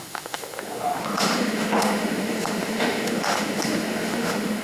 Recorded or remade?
remade